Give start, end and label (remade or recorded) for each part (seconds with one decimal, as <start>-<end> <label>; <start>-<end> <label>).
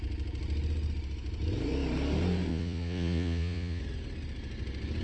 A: 0.0-2.5 recorded; 2.5-3.8 remade; 3.8-5.0 recorded